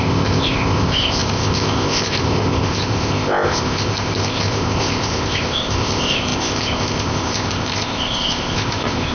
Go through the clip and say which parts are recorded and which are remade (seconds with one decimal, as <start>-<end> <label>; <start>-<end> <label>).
0.0-9.1 remade